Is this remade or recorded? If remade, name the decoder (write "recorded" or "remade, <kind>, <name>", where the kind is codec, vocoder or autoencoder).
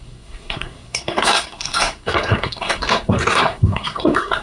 remade, codec, SNAC